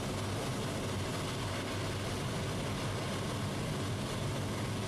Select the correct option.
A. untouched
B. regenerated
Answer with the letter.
A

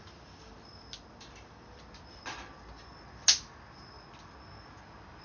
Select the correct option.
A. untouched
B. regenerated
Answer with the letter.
A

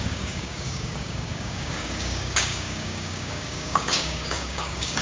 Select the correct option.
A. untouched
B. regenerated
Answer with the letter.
B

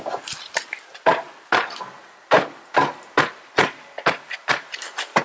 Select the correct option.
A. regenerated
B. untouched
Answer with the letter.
B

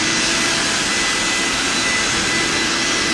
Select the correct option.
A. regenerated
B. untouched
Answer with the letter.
B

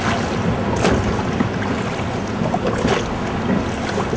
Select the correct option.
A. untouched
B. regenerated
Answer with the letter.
A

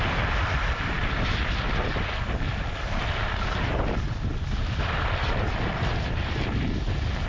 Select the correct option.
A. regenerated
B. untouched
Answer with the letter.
B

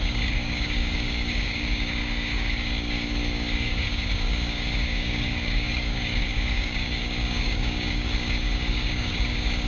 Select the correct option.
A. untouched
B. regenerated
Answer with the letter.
B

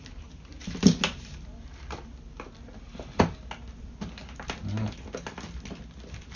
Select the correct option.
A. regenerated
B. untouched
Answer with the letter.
B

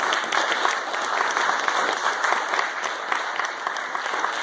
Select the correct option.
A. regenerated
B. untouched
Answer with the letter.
B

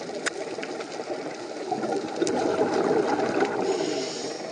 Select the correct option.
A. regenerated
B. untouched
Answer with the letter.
B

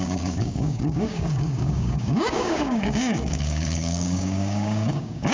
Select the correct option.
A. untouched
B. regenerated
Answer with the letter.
B